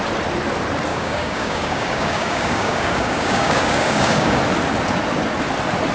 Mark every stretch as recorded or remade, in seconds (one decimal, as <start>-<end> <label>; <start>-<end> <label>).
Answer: 0.0-0.9 recorded; 0.9-4.4 remade; 4.4-5.9 recorded